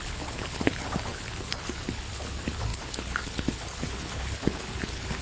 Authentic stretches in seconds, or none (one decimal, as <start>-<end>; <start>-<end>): none